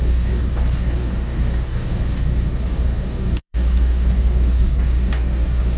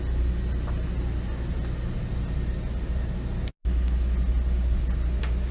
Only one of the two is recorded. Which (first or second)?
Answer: second